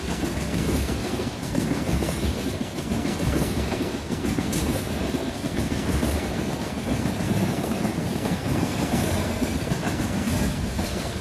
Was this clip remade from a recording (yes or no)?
yes